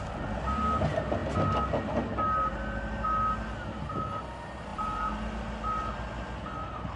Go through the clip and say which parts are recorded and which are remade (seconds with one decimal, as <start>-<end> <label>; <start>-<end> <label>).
0.0-7.0 recorded

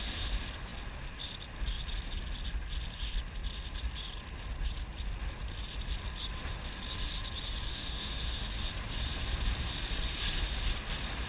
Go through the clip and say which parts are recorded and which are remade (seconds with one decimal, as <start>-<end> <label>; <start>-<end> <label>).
0.0-7.7 recorded; 7.7-8.5 remade; 8.5-11.3 recorded

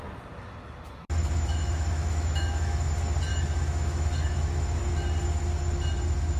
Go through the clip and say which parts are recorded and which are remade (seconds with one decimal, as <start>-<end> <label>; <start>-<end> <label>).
0.0-1.2 recorded; 1.2-2.9 remade; 2.9-3.3 recorded; 3.3-4.8 remade; 4.8-6.4 recorded

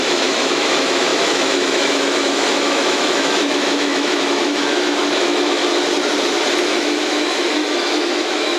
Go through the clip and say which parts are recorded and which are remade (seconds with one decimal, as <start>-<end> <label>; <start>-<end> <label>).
0.0-5.6 remade; 5.6-6.6 recorded; 6.6-8.6 remade

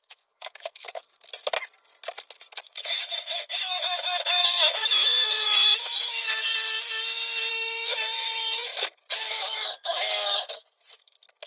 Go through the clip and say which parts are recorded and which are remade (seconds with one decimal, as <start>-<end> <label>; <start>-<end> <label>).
0.0-1.0 remade; 1.0-2.5 recorded; 2.5-6.5 remade; 6.5-7.5 recorded; 7.5-11.5 remade

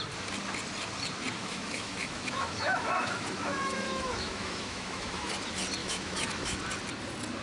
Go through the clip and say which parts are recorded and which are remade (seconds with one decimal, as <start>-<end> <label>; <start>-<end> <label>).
0.0-1.4 recorded; 1.4-5.3 remade; 5.3-5.8 recorded; 5.8-6.6 remade; 6.6-7.4 recorded

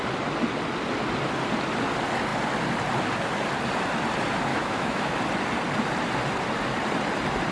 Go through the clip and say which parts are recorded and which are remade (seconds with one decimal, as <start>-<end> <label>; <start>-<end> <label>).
0.0-4.5 recorded; 4.5-5.2 remade; 5.2-7.5 recorded